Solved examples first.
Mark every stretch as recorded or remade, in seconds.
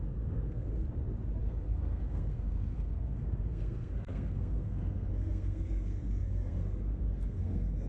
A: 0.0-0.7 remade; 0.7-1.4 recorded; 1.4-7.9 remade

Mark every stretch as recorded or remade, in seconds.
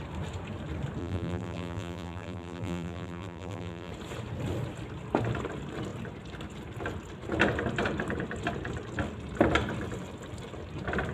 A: 0.0-1.0 recorded; 1.0-3.9 remade; 3.9-11.1 recorded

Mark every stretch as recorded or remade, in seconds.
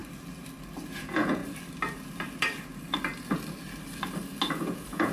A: 0.0-1.0 recorded; 1.0-1.4 remade; 1.4-4.5 recorded; 4.5-5.1 remade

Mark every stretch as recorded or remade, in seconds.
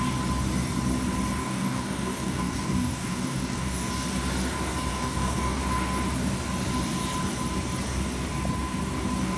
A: 0.0-1.4 recorded; 1.4-3.9 remade; 3.9-4.9 recorded; 4.9-5.6 remade; 5.6-9.4 recorded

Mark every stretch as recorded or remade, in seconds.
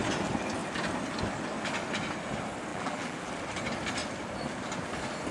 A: 0.0-2.7 recorded; 2.7-3.3 remade; 3.3-5.3 recorded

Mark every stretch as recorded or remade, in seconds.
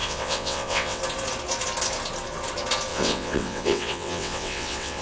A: 0.0-1.0 remade; 1.0-2.9 recorded; 2.9-5.0 remade